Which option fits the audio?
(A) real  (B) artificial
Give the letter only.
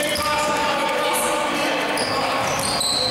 A